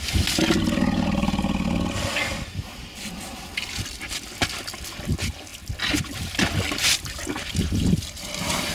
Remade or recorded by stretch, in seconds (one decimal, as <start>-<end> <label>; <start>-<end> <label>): 0.0-8.7 recorded